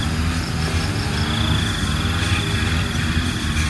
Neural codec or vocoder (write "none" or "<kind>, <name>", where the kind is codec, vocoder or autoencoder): none